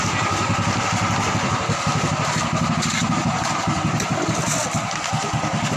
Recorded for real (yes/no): yes